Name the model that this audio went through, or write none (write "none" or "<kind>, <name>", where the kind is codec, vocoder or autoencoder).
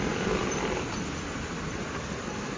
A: none